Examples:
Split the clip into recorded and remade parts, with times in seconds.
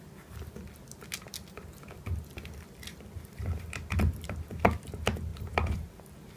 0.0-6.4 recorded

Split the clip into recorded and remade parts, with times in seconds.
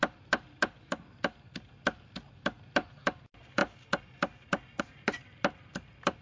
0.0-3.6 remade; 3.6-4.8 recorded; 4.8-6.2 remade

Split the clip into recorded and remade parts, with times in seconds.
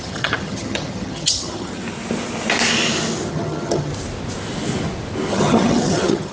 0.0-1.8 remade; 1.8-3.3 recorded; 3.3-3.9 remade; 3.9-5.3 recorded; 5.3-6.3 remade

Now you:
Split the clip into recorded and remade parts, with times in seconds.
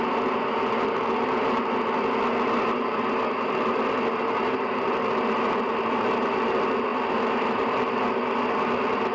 0.0-9.1 recorded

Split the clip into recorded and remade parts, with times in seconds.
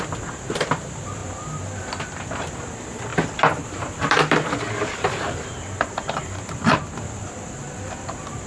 0.0-1.2 remade; 1.2-2.0 recorded; 2.0-8.5 remade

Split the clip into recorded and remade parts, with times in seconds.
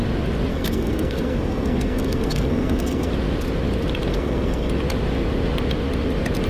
0.0-0.5 recorded; 0.5-3.1 remade; 3.1-4.1 recorded; 4.1-4.7 remade; 4.7-6.5 recorded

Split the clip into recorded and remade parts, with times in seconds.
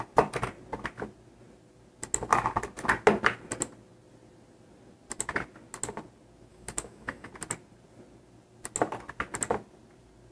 0.0-6.5 recorded; 6.5-7.3 remade; 7.3-10.3 recorded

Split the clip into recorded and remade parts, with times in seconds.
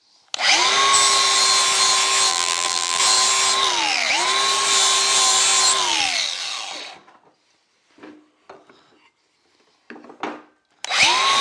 0.0-2.3 recorded; 2.3-3.0 remade; 3.0-11.4 recorded